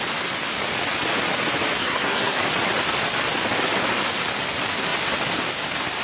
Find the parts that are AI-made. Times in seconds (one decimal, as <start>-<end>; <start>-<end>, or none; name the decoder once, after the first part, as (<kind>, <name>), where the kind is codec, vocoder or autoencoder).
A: 1.8-2.4 (codec, SNAC)